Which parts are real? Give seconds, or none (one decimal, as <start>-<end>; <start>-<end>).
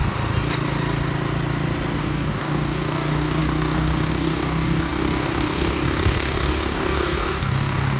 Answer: 0.0-2.0